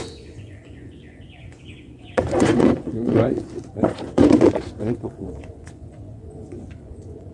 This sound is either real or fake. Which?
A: fake